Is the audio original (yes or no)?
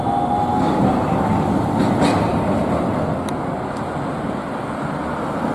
yes